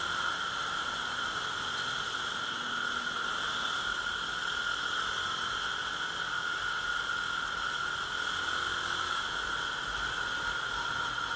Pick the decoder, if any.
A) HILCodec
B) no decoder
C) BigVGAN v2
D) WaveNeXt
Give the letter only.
B